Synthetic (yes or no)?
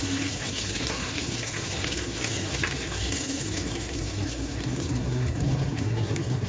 yes